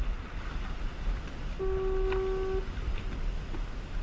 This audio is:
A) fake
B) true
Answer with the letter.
B